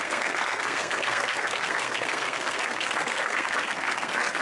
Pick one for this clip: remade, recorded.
remade